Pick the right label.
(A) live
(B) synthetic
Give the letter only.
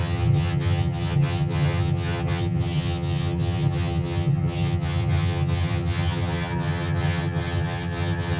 B